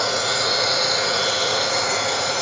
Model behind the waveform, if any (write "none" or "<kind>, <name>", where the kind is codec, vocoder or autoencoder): vocoder, Vocos